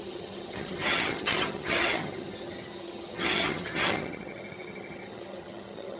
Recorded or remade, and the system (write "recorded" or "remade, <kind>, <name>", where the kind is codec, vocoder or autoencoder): remade, vocoder, HiFi-GAN